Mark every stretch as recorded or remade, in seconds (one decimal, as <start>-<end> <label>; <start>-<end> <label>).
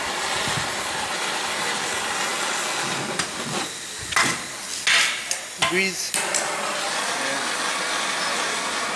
0.0-9.0 recorded